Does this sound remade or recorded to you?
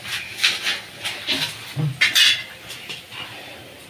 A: recorded